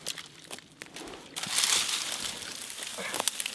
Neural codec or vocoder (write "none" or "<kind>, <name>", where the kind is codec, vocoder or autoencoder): none